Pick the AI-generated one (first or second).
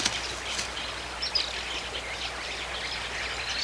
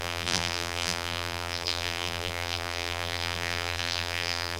second